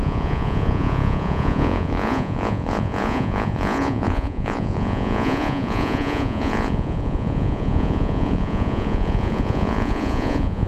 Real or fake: fake